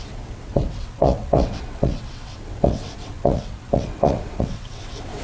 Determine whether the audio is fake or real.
fake